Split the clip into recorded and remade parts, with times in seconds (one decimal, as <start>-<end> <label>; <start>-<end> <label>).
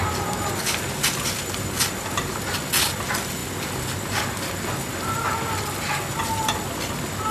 0.0-7.3 recorded